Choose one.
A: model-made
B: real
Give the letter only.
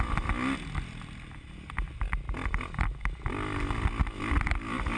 B